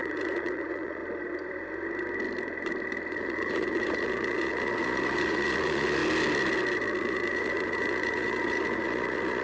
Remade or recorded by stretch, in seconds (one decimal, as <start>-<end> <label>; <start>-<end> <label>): 0.0-1.0 remade; 1.0-3.1 recorded; 3.1-6.0 remade; 6.0-7.0 recorded; 7.0-9.4 remade